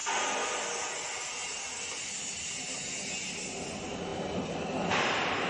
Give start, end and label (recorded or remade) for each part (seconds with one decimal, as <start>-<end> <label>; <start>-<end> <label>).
0.0-5.5 recorded